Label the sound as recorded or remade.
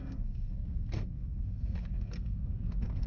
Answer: remade